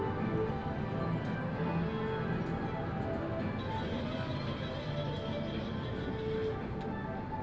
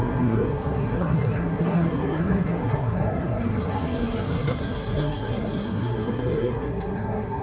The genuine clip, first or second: first